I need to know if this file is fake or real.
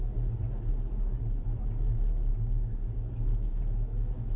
real